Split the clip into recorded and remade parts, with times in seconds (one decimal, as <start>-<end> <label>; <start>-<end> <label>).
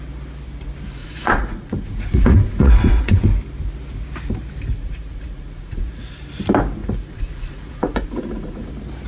0.0-1.0 recorded; 1.0-3.2 remade; 3.2-4.7 recorded; 4.7-6.2 remade; 6.2-6.8 recorded; 6.8-8.7 remade; 8.7-9.1 recorded